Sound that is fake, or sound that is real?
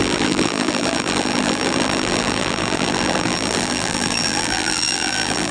fake